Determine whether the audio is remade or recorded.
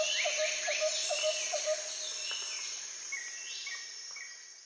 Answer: recorded